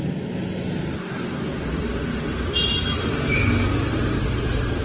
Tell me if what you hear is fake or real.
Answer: real